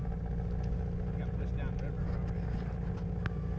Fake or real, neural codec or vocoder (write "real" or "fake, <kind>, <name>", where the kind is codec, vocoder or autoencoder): real